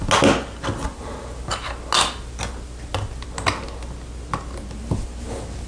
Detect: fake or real real